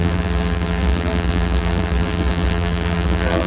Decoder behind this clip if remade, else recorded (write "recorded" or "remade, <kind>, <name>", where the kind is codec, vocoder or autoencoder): remade, vocoder, BigVGAN v2